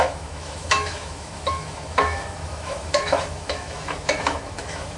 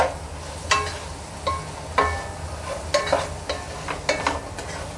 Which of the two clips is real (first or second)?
second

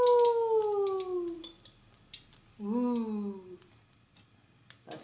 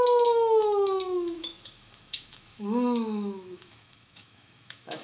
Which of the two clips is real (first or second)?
first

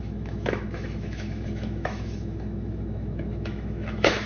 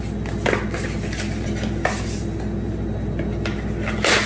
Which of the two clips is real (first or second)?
second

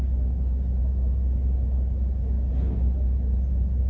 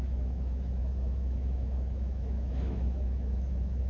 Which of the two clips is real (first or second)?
first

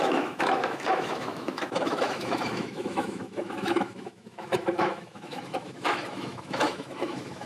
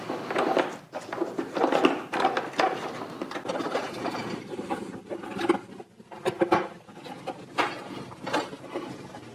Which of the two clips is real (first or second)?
second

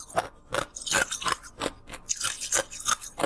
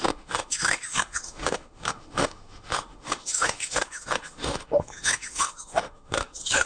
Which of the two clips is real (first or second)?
first